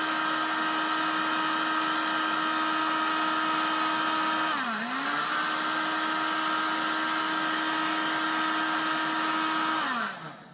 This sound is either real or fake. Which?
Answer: real